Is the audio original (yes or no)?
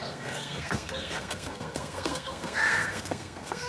no